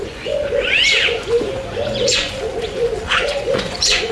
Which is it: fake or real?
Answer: fake